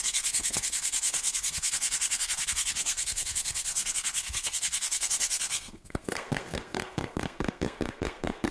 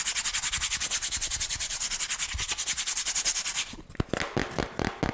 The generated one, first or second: first